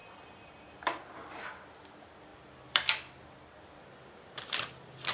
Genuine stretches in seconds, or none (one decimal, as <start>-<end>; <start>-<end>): 1.5-2.3